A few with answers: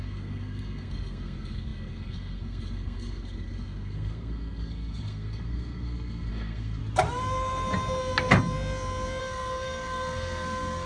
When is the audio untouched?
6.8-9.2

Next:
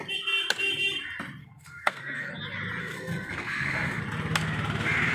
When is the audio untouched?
0.0-1.4; 2.3-2.8; 4.0-5.1

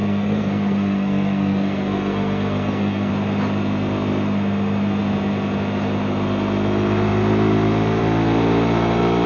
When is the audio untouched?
3.1-9.3

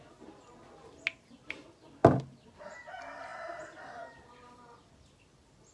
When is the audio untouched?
0.0-5.7

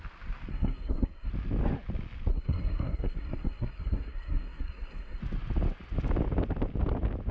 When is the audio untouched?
0.0-0.5; 1.3-2.3; 5.2-7.3

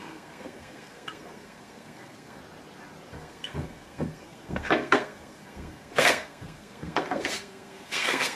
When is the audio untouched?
2.4-3.1

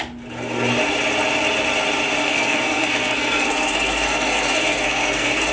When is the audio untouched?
0.0-2.2

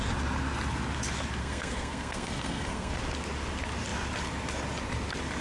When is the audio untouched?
0.0-1.4; 2.9-5.4